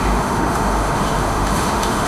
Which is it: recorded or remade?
remade